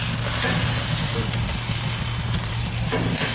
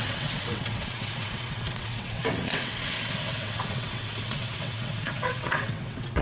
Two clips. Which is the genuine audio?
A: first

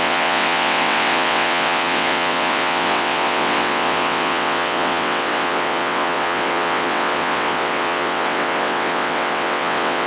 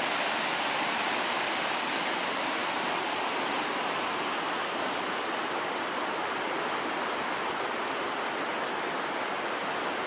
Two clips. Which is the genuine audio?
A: second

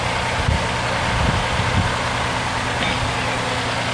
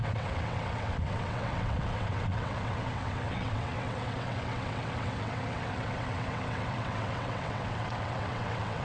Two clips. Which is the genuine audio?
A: first